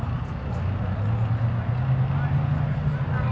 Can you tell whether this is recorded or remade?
recorded